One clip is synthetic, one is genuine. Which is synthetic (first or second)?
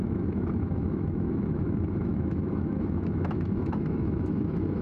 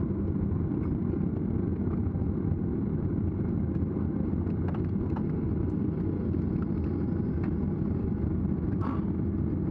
first